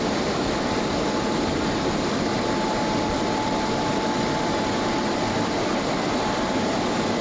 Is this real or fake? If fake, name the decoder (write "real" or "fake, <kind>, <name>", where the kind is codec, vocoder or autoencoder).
fake, vocoder, BigVGAN v2